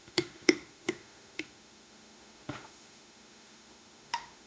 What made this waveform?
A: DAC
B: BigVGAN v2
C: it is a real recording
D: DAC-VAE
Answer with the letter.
D